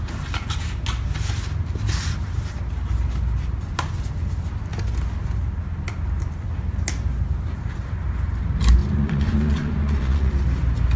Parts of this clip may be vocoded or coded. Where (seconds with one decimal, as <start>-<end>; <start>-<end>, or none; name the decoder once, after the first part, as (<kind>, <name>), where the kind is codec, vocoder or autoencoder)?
8.8-10.3 (vocoder, Vocos)